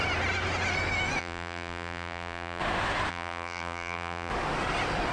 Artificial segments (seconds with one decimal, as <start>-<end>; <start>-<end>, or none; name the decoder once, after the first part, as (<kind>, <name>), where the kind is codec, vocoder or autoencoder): 1.2-2.6 (vocoder, BigVGAN v2); 3.1-4.3